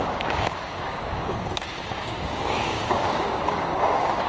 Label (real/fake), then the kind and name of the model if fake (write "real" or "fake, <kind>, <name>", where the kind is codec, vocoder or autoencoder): fake, codec, DAC